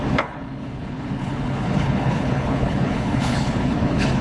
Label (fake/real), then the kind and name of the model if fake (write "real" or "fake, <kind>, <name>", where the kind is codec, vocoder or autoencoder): fake, codec, HILCodec